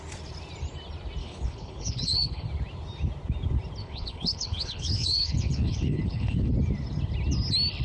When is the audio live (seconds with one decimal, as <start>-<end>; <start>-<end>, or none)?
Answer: 0.0-1.2; 2.5-3.8; 6.5-7.8

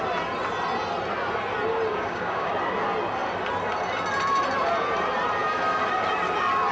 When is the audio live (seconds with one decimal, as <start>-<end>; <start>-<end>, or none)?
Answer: 0.0-1.9; 2.5-6.7